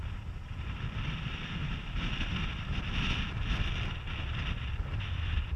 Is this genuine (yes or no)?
yes